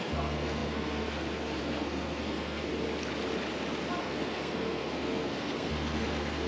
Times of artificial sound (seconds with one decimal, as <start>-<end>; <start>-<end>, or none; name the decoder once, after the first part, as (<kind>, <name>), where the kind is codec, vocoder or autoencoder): 0.0-2.7 (codec, SNAC); 4.0-6.5